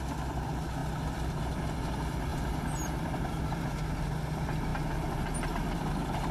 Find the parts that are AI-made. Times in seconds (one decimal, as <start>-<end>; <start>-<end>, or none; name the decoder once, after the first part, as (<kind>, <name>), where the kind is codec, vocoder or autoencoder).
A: 2.3-3.7 (vocoder, BigVGAN v2); 4.7-6.3